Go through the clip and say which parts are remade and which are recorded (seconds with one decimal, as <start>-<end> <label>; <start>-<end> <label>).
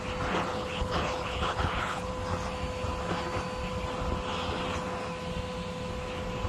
0.0-0.5 recorded; 0.5-2.1 remade; 2.1-6.5 recorded